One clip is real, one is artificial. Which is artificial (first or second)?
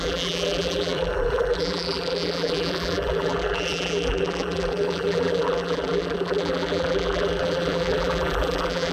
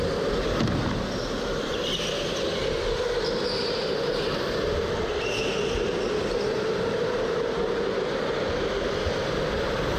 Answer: first